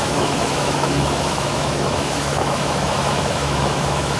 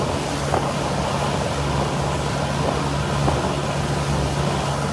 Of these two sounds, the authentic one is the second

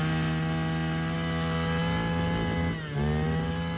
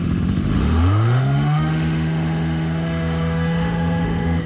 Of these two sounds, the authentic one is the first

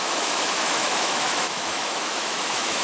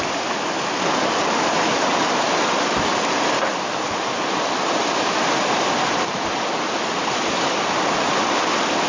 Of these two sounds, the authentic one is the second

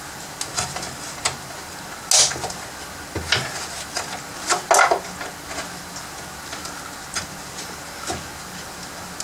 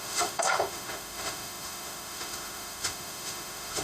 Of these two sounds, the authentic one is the first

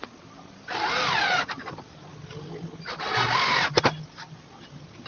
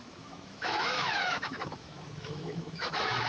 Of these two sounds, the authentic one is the first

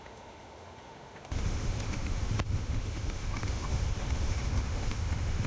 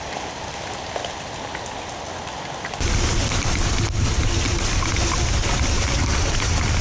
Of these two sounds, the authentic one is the second